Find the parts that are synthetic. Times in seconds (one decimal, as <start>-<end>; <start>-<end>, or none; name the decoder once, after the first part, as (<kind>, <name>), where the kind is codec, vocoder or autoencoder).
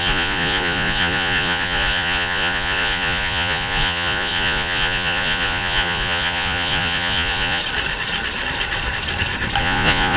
0.0-7.6 (vocoder, Vocos); 9.6-10.2